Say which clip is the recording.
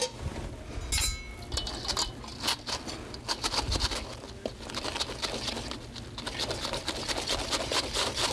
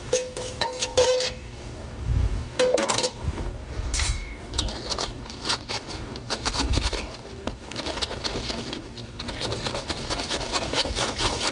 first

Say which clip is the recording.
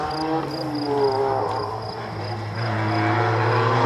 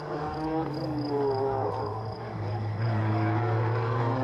first